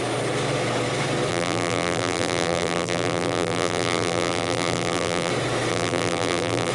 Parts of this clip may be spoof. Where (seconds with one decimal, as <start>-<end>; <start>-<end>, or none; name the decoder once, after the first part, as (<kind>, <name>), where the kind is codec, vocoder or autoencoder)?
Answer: 1.3-5.3 (vocoder, BigVGAN v2); 5.7-6.7